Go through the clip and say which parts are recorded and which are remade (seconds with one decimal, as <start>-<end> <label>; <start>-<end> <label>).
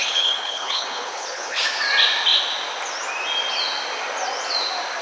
0.0-1.6 remade; 1.6-5.0 recorded